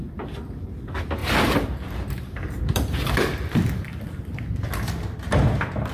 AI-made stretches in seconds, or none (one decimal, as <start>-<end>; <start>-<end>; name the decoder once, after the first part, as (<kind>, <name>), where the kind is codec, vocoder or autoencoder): 1.2-4.7 (vocoder, BigVGAN v2)